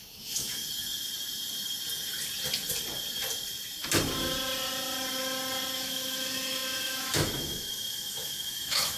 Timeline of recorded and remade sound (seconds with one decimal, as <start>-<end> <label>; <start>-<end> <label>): 0.0-0.6 remade; 0.6-5.7 recorded; 5.7-9.0 remade